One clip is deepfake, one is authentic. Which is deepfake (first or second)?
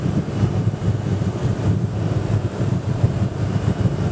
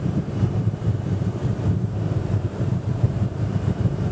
second